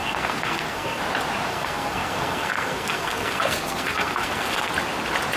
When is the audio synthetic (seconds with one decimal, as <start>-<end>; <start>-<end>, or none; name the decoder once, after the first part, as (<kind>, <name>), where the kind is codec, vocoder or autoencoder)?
0.0-1.0 (codec, SNAC); 1.5-4.7